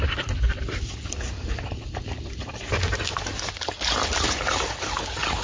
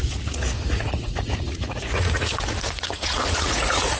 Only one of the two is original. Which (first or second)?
first